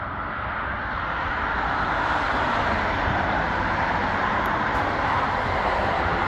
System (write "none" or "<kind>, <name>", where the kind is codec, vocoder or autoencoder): vocoder, BigVGAN v2